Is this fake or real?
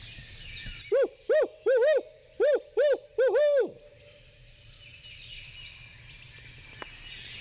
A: real